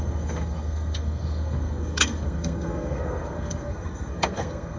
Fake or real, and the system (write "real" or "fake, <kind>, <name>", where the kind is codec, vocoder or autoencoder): fake, codec, SNAC